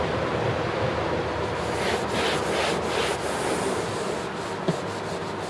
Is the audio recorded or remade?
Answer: recorded